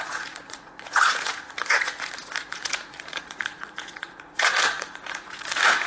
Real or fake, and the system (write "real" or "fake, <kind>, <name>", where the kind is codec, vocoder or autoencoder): fake, vocoder, Vocos